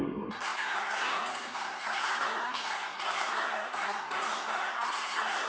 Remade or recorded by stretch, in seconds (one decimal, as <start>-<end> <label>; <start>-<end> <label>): 0.0-5.5 remade